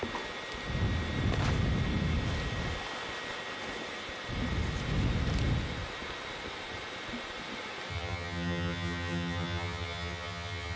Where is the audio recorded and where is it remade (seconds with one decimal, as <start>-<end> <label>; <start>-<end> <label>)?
0.0-7.9 recorded; 7.9-10.8 remade